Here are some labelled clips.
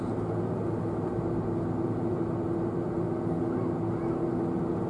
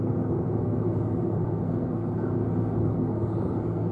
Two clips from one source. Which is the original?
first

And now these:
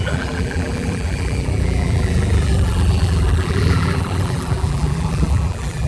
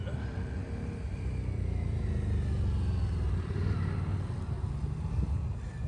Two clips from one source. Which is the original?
second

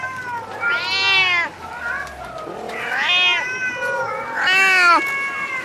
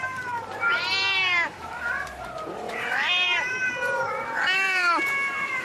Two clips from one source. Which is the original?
first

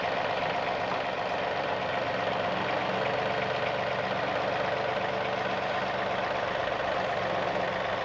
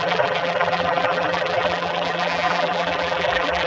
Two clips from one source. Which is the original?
first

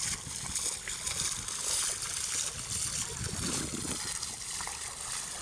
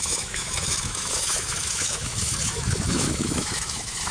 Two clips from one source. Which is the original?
first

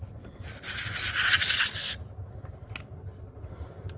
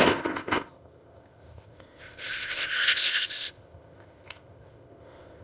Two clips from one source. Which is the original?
first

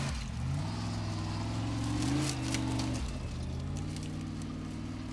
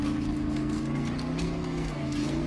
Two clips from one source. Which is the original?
first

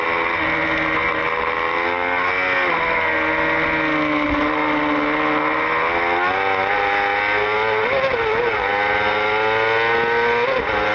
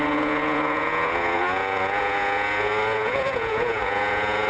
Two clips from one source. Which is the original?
first